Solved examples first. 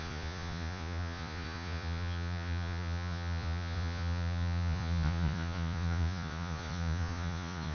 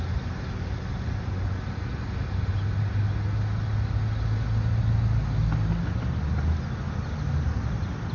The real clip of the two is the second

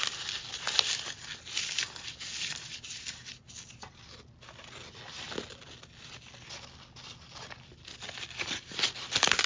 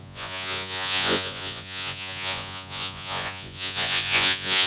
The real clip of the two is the first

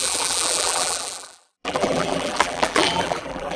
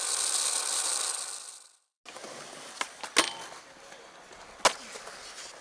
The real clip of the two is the second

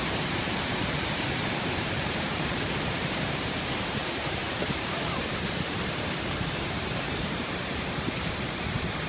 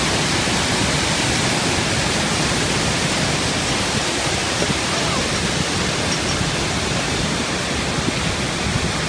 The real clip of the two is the second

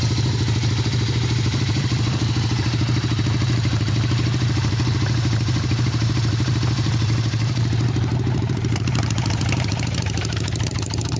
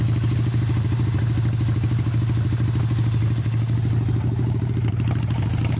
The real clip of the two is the second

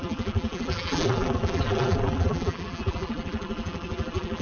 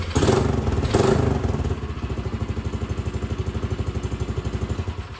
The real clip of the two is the second